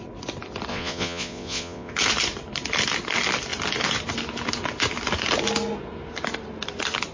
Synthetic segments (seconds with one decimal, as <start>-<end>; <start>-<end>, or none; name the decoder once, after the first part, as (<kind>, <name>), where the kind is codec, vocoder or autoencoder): 0.7-1.9 (vocoder, Vocos)